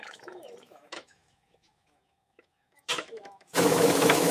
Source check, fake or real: fake